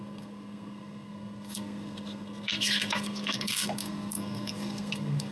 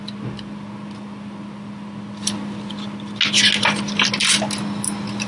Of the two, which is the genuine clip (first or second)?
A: second